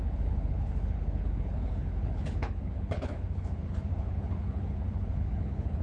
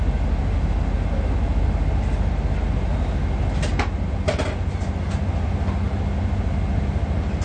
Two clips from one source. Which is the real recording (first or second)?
second